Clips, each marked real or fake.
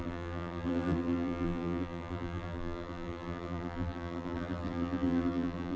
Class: fake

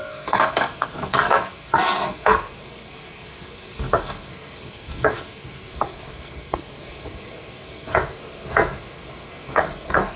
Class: fake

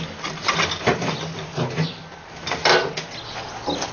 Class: real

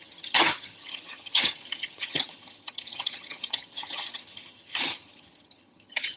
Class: fake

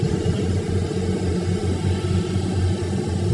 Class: fake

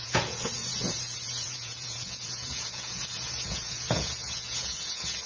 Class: fake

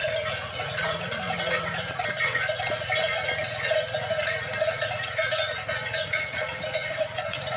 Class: fake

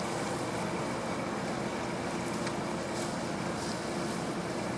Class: real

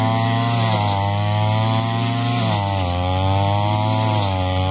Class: real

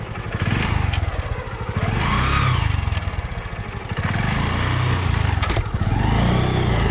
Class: real